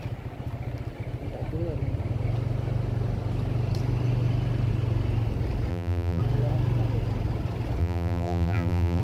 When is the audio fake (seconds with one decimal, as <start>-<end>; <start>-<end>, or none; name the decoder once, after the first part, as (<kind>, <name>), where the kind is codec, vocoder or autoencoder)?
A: 5.7-6.2 (vocoder, BigVGAN v2); 7.8-9.0